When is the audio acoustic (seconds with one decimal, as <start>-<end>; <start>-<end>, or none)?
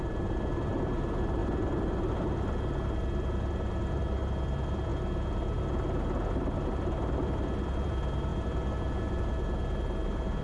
0.0-10.4